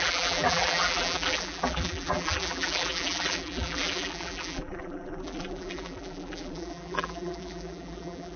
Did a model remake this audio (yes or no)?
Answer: yes